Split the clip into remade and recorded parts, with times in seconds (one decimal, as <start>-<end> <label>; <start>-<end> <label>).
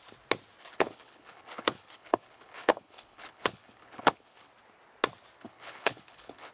0.0-0.6 recorded; 0.6-4.5 remade; 4.5-5.4 recorded; 5.4-6.5 remade